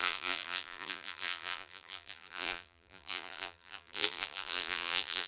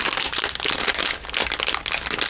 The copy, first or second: first